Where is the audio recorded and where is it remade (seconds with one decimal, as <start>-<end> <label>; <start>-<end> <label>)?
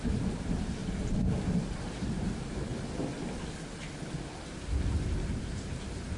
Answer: 0.0-0.8 remade; 0.8-1.6 recorded; 1.6-2.7 remade; 2.7-5.4 recorded; 5.4-6.2 remade